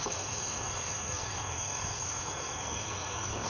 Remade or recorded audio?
remade